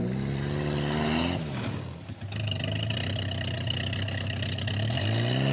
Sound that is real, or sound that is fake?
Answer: real